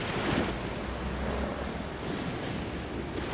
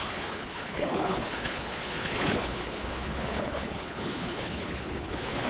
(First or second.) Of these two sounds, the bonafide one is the first